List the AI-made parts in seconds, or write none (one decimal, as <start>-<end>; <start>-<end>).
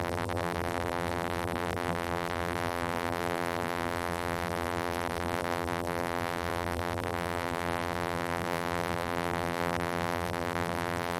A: 0.0-11.2